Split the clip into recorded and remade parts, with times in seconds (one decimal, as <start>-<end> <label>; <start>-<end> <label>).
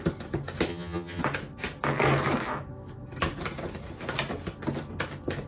0.0-0.7 recorded; 0.7-1.2 remade; 1.2-5.5 recorded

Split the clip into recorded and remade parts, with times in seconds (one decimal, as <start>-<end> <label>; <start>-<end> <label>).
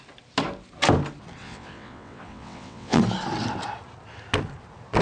0.0-1.4 recorded; 1.4-3.0 remade; 3.0-5.0 recorded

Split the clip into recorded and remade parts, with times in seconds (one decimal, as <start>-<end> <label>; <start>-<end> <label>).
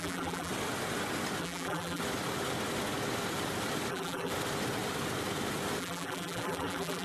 0.0-0.5 remade; 0.5-1.4 recorded; 1.4-2.0 remade; 2.0-3.9 recorded; 3.9-4.3 remade; 4.3-5.8 recorded; 5.8-7.0 remade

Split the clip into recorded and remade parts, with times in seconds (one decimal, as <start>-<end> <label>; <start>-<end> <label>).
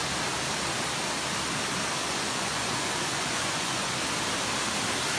0.0-2.0 recorded; 2.0-4.0 remade; 4.0-5.2 recorded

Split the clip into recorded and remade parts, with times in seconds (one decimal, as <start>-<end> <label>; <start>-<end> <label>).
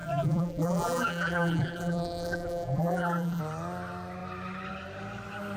0.0-3.4 remade; 3.4-5.6 recorded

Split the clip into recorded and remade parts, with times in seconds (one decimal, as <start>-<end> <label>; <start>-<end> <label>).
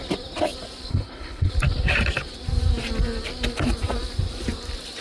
0.0-0.9 recorded; 0.9-1.5 remade; 1.5-5.0 recorded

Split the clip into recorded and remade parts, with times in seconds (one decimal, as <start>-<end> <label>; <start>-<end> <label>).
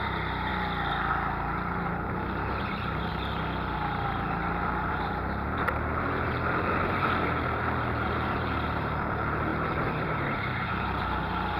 0.0-0.5 remade; 0.5-2.6 recorded; 2.6-3.1 remade; 3.1-4.9 recorded; 4.9-11.6 remade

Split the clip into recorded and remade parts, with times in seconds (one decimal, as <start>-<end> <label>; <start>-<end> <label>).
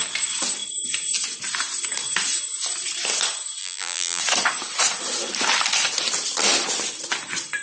0.0-3.6 recorded; 3.6-4.2 remade; 4.2-7.6 recorded